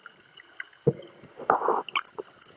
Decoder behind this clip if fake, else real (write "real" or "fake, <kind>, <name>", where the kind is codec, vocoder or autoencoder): real